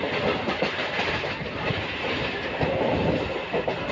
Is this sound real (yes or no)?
yes